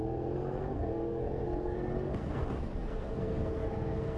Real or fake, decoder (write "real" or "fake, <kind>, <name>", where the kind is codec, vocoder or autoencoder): fake, codec, SNAC